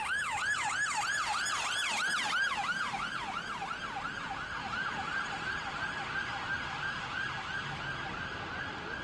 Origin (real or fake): real